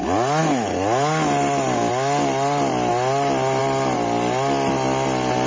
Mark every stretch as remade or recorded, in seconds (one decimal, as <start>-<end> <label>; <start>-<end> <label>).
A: 0.0-5.5 recorded